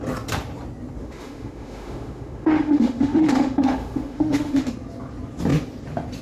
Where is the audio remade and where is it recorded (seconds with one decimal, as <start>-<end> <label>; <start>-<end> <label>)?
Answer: 0.0-1.0 recorded; 1.0-4.7 remade; 4.7-6.2 recorded